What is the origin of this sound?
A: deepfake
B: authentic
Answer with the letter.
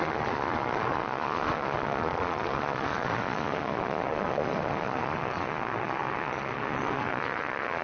A